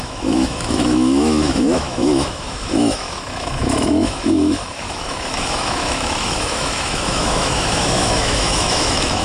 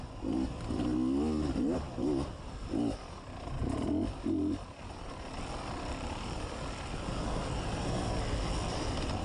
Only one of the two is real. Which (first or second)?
second